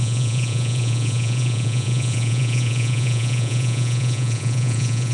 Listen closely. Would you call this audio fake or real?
fake